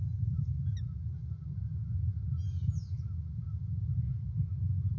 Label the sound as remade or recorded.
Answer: recorded